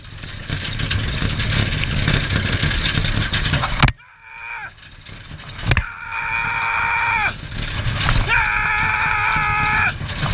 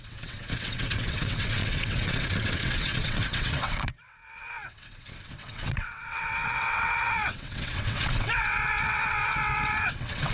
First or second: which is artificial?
second